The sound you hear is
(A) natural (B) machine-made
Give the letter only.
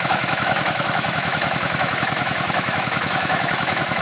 B